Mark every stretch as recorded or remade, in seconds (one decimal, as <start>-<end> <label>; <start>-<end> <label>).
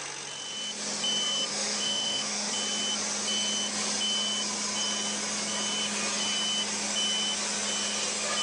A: 0.0-1.5 recorded; 1.5-2.5 remade; 2.5-8.4 recorded